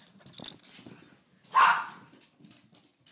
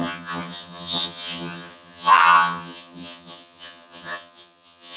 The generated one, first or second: second